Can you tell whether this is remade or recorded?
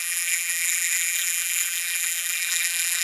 remade